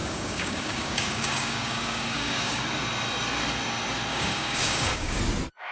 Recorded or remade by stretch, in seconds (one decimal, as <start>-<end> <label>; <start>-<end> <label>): 0.0-2.6 remade; 2.6-4.1 recorded; 4.1-5.2 remade; 5.2-5.7 recorded